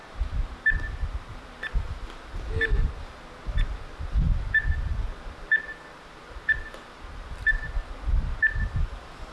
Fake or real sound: real